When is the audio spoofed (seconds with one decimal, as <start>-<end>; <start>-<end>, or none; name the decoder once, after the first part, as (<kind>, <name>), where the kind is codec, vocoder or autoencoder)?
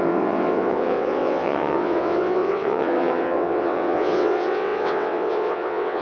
0.0-6.0 (vocoder, WaveNeXt)